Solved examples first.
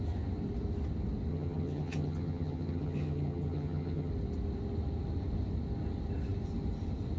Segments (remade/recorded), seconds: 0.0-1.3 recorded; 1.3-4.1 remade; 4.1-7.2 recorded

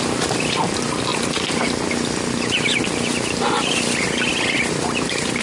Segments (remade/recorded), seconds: 0.0-5.4 recorded

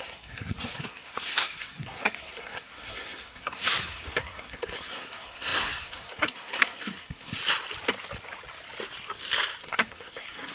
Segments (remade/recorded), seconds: 0.0-7.4 remade; 7.4-9.6 recorded; 9.6-10.5 remade

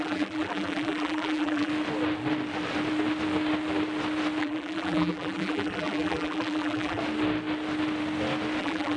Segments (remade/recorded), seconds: 0.0-1.7 remade; 1.7-4.4 recorded; 4.4-7.0 remade; 7.0-8.6 recorded; 8.6-9.0 remade

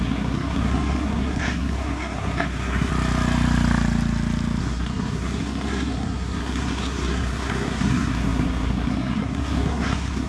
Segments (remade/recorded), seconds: 0.0-2.9 remade; 2.9-4.6 recorded; 4.6-10.3 remade

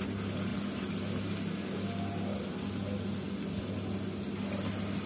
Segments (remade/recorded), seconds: 0.0-5.1 recorded

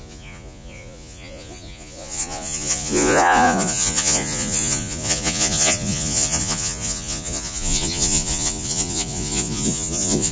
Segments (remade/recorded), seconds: 0.0-10.3 remade

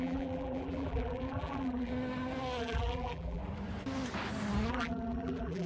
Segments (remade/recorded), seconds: 0.0-1.9 remade; 1.9-2.6 recorded; 2.6-3.4 remade; 3.4-4.7 recorded; 4.7-5.7 remade